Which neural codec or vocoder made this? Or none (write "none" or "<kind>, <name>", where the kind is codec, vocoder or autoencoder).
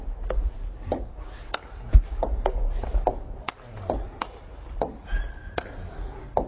none